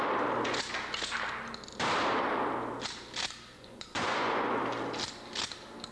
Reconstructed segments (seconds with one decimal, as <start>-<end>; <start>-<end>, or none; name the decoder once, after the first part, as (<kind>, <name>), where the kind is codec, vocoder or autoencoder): 3.5-4.6 (vocoder, Vocos)